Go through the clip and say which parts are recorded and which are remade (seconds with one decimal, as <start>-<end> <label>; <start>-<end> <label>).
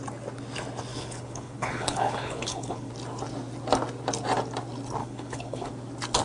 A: 0.0-0.9 recorded; 0.9-2.9 remade; 2.9-5.0 recorded; 5.0-5.7 remade; 5.7-6.2 recorded